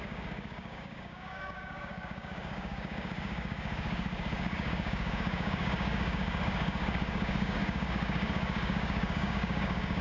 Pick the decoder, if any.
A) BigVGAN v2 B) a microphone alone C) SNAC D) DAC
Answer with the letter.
D